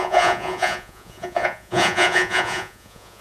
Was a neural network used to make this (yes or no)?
yes